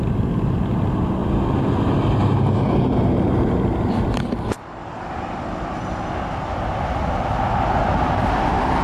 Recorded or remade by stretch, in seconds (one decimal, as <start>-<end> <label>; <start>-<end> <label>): 0.0-8.8 recorded